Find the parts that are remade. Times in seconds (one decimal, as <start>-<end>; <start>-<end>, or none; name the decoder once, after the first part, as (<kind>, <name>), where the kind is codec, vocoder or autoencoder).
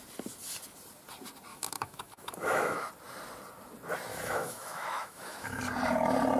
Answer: 1.5-2.9 (autoencoder, DAC-VAE); 4.1-5.6